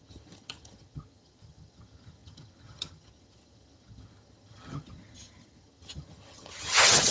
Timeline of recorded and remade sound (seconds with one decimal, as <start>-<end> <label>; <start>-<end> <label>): 0.0-7.1 remade